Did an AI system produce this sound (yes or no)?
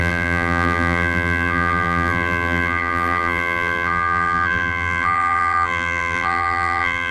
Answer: yes